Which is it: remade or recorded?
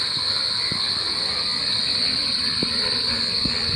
recorded